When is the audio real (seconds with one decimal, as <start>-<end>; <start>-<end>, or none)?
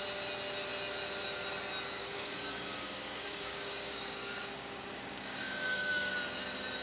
0.0-2.0; 6.1-6.8